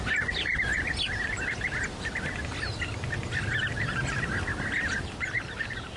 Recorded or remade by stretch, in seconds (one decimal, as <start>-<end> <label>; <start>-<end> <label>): 0.0-6.0 recorded